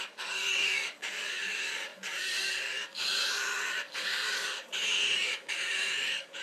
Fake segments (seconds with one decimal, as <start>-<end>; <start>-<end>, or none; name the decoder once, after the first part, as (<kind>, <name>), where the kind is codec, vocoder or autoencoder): 0.0-6.4 (codec, DAC)